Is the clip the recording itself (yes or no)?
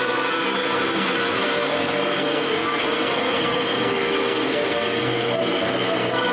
no